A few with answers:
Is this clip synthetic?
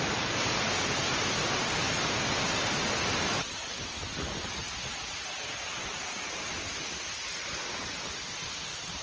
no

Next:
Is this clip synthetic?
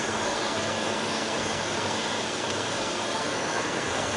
yes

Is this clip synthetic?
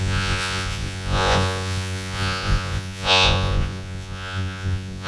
yes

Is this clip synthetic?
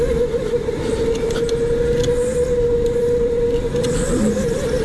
no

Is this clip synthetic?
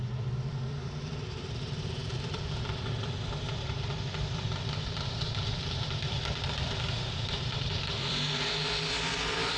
yes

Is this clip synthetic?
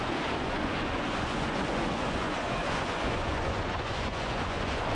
yes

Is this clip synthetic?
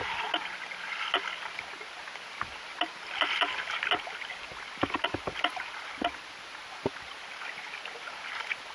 no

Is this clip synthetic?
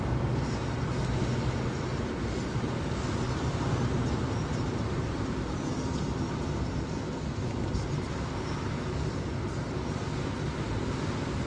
no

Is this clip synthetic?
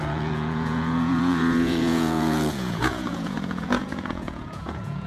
yes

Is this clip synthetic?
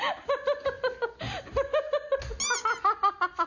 no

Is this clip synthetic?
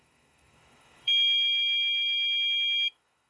yes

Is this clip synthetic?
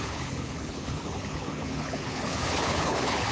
yes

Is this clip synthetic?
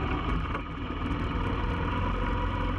no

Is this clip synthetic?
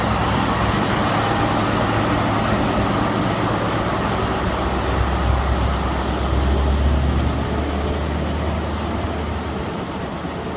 no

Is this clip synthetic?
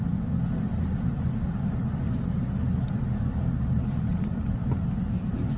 no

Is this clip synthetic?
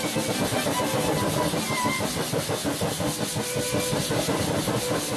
no